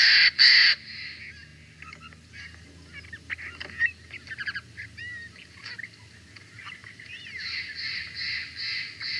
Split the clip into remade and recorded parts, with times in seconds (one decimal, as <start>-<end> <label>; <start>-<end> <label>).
0.0-6.8 recorded; 6.8-8.0 remade; 8.0-9.2 recorded